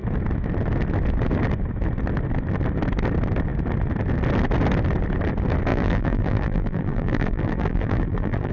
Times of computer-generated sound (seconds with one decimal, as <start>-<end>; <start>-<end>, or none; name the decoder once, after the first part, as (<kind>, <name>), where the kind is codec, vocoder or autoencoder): 5.7-8.5 (vocoder, BigVGAN v2)